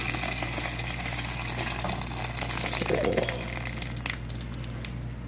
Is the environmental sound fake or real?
real